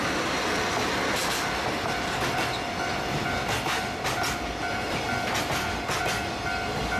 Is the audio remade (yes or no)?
no